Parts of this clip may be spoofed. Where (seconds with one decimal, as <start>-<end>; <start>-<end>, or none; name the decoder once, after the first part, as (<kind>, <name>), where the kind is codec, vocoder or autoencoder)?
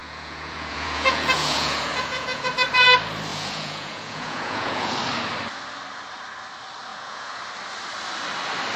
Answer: 0.0-2.5 (vocoder, Vocos); 3.3-4.9; 6.9-7.4